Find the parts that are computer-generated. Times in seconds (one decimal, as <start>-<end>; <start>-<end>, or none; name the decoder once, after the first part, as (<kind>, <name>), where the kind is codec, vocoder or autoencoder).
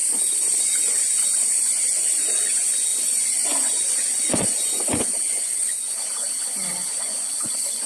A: 0.6-7.9 (vocoder, Vocos)